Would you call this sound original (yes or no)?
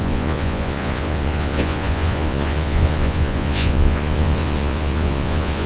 no